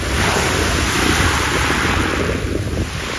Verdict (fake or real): real